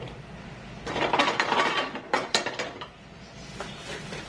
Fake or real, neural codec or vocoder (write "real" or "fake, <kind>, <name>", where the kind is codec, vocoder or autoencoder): real